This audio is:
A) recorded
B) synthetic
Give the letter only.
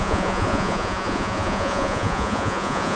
B